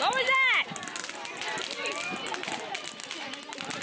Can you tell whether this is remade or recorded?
recorded